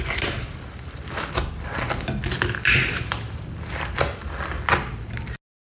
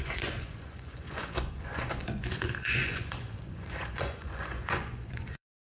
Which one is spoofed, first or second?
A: second